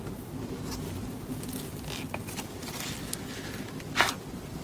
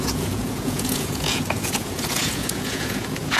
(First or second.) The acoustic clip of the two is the first